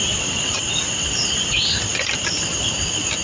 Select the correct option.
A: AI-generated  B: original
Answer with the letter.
B